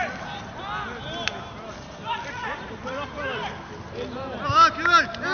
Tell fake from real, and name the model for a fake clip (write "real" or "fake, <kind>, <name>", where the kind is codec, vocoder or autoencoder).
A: real